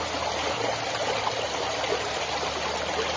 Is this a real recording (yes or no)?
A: yes